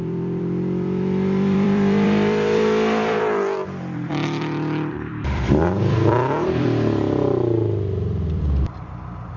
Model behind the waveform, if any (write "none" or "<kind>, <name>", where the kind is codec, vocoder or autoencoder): vocoder, BigVGAN v2